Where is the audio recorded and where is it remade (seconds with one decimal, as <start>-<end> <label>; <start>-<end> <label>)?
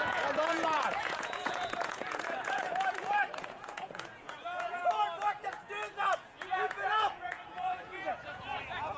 0.0-4.8 remade; 4.8-6.0 recorded; 6.0-9.0 remade